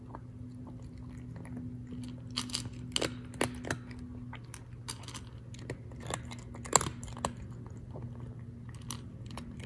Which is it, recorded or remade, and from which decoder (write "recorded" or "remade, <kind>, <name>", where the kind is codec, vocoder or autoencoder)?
recorded